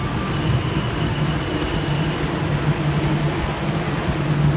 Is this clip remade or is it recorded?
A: recorded